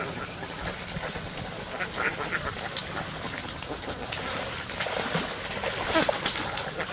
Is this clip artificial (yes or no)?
no